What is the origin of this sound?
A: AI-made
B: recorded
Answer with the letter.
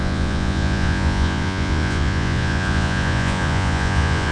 A